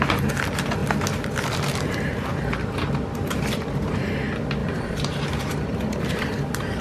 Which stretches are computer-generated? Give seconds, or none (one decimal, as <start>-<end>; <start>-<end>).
2.3-4.0; 4.6-6.8